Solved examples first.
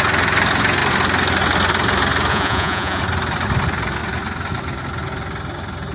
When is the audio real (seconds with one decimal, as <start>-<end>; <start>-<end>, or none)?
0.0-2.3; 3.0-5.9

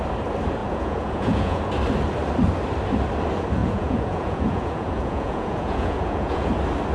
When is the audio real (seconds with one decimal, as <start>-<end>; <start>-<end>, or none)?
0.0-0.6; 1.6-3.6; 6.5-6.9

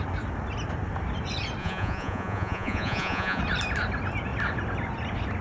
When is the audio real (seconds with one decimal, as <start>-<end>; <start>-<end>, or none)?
0.0-1.6; 3.4-5.4